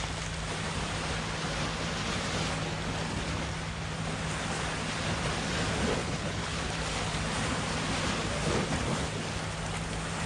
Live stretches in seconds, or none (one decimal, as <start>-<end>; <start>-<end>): 0.0-6.0; 6.7-10.3